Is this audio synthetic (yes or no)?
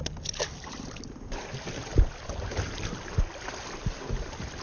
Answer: yes